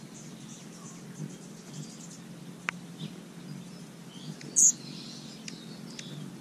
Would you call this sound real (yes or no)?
yes